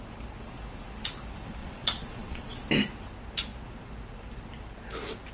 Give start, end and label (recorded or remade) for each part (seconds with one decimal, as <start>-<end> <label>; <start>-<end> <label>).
0.0-1.6 recorded; 1.6-2.7 remade; 2.7-5.3 recorded